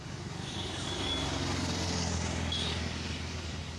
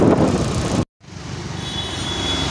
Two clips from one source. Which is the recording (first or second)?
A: second